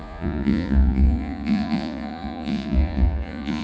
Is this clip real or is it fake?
fake